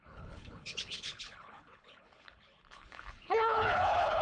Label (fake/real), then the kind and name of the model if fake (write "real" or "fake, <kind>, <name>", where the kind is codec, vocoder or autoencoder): fake, codec, HILCodec